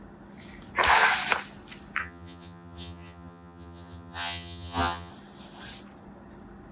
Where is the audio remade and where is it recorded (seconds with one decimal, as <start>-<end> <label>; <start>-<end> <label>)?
0.0-2.0 recorded; 2.0-5.1 remade; 5.1-6.7 recorded